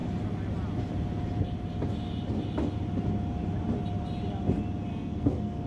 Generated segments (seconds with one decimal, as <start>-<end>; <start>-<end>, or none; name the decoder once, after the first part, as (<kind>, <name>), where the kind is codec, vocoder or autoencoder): 4.9-5.7 (codec, SNAC)